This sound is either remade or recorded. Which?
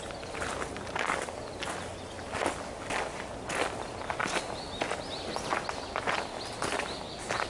recorded